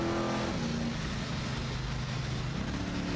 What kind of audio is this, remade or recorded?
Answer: recorded